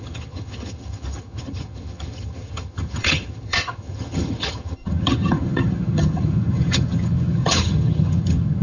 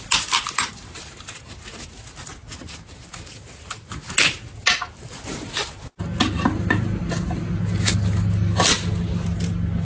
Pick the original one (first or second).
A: second